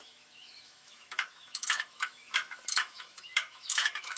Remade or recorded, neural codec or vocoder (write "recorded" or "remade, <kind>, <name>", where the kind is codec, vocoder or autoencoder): remade, autoencoder, DAC-VAE